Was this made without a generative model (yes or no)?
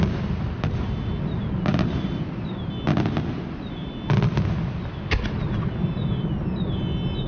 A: yes